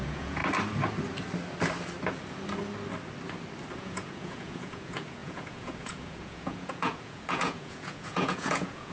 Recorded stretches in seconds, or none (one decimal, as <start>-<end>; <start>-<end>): 0.4-3.8